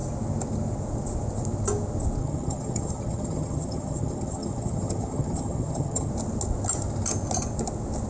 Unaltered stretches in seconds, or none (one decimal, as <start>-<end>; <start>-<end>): 0.0-2.2; 6.1-8.1

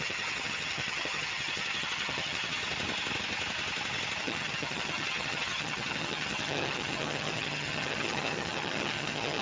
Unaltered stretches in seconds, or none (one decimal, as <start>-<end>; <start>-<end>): 2.6-4.2

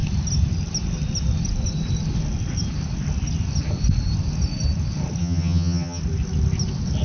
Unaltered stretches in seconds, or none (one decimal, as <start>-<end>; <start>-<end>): 0.0-5.2; 6.0-7.0

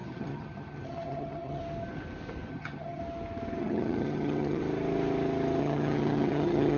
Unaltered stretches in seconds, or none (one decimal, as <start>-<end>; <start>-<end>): 1.6-2.5; 3.0-3.6; 4.6-5.6

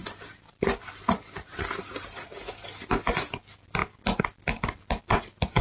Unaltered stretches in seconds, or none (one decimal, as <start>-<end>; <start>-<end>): 0.0-5.6

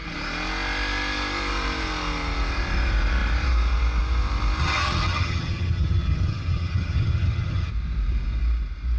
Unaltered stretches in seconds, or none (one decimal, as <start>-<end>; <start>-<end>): 0.0-4.6; 7.7-9.0

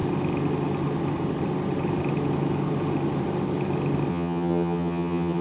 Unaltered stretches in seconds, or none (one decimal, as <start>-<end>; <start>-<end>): 0.0-4.1

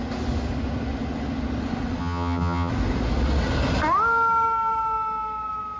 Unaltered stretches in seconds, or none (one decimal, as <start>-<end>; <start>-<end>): 0.0-2.0; 2.7-5.8